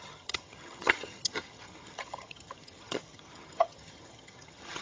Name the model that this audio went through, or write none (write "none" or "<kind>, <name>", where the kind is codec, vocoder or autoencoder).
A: vocoder, HiFi-GAN